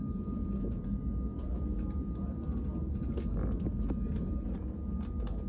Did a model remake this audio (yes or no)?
no